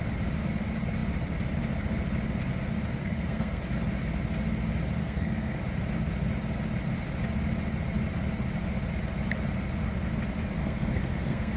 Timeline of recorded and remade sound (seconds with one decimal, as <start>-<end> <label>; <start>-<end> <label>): 0.0-3.0 recorded; 3.0-3.6 remade; 3.6-5.0 recorded; 5.0-5.6 remade; 5.6-10.6 recorded; 10.6-11.6 remade